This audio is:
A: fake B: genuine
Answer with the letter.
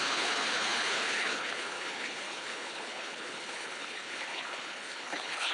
A